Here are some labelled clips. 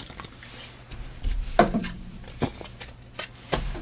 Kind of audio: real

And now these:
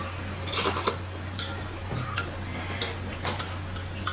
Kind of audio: real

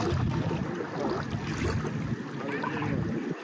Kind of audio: real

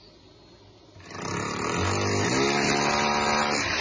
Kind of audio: real